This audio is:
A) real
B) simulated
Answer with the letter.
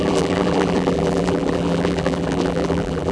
B